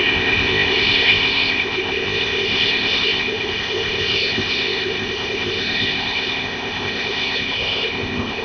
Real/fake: fake